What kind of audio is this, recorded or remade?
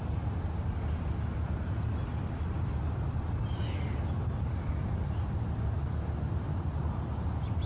recorded